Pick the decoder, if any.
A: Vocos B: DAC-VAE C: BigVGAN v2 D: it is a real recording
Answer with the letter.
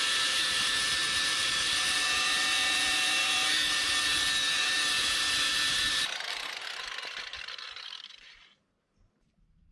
C